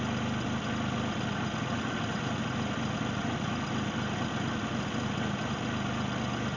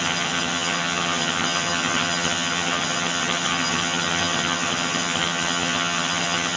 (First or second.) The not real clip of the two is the second